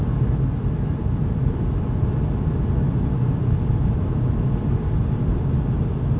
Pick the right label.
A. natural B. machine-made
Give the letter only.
A